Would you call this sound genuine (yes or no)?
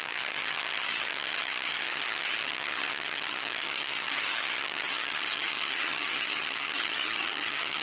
no